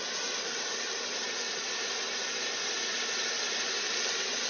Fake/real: real